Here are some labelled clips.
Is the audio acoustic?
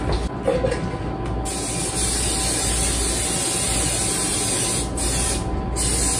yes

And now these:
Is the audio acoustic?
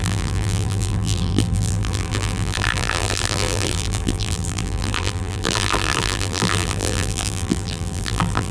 no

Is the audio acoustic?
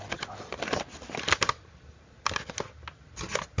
yes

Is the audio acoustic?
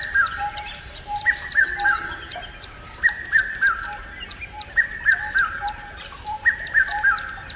no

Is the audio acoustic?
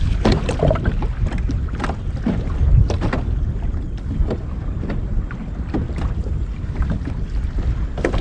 yes